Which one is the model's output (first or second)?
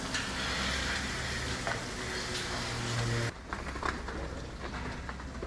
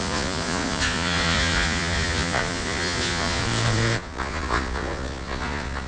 second